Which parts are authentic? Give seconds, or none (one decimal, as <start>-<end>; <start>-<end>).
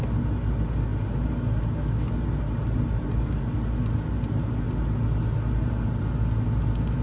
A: 0.0-7.0